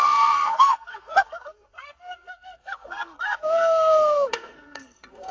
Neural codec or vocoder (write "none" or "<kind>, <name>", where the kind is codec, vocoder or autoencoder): codec, SNAC